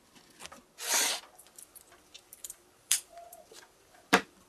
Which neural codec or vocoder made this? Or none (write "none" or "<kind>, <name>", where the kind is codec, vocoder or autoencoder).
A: vocoder, BigVGAN v2